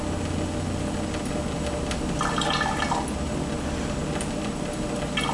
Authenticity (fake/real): real